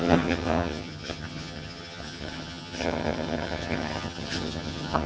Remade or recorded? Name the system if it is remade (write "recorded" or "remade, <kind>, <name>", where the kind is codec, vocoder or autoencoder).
remade, vocoder, HiFi-GAN